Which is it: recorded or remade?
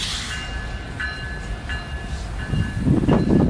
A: recorded